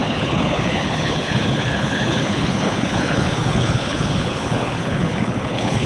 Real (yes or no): no